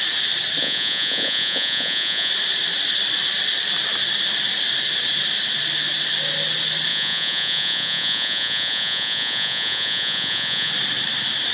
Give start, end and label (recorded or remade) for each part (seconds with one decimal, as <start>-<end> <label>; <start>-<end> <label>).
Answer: 0.0-0.6 recorded; 0.6-2.3 remade; 2.3-6.9 recorded; 6.9-10.7 remade; 10.7-11.5 recorded